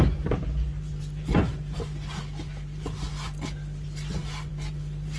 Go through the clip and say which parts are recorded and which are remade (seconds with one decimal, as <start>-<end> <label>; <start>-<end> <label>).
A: 0.0-5.2 recorded